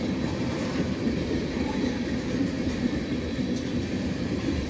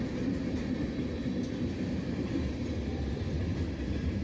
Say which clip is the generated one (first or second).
first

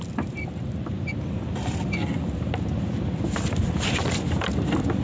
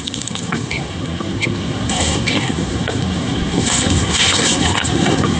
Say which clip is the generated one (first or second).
second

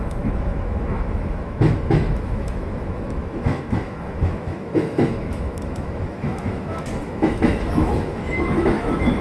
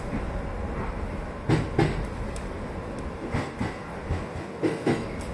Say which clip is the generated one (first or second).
first